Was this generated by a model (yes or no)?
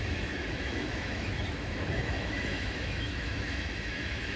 yes